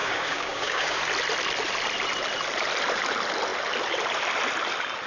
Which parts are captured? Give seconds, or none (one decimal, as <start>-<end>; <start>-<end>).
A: 1.0-5.1